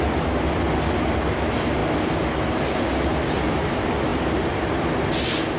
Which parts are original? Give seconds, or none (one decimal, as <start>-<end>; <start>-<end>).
0.0-5.6